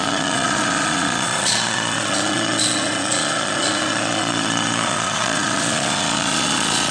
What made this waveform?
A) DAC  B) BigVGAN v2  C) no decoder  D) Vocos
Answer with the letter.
D